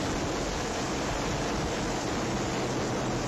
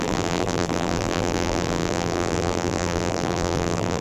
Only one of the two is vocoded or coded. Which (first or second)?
second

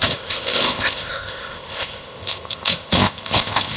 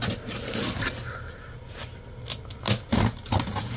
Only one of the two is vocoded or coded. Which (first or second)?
first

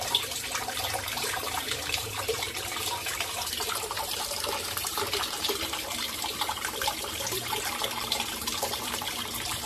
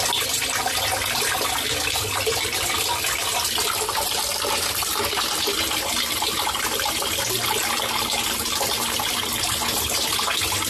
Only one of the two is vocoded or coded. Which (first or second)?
first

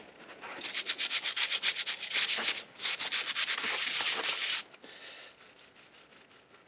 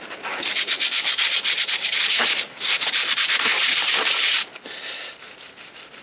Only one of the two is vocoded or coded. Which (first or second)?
second